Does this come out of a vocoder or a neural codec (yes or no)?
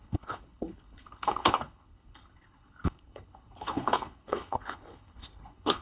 yes